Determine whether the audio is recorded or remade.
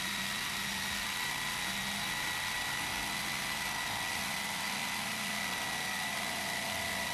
recorded